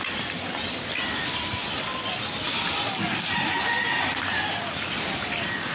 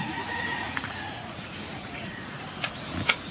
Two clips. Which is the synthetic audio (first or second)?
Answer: second